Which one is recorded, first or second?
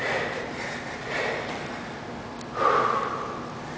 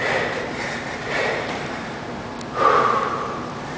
first